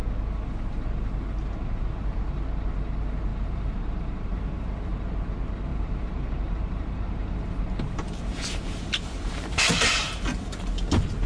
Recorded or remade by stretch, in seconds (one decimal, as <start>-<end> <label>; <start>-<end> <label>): 0.0-3.3 recorded; 3.3-4.3 remade; 4.3-5.7 recorded; 5.7-10.7 remade; 10.7-11.3 recorded